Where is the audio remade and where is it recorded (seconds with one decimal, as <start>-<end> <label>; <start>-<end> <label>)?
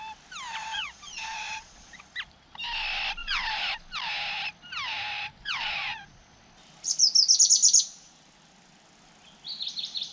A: 0.0-0.6 recorded; 0.6-2.0 remade; 2.0-3.2 recorded; 3.2-3.7 remade; 3.7-5.4 recorded; 5.4-6.4 remade; 6.4-10.1 recorded